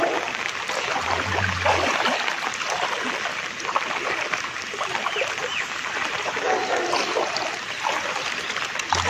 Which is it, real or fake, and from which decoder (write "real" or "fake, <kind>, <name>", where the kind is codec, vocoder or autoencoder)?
real